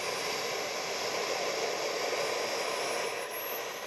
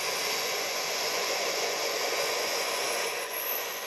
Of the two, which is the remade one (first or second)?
second